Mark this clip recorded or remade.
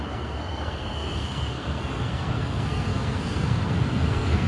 remade